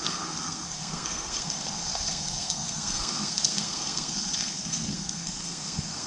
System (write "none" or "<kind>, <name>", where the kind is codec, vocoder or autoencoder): codec, SNAC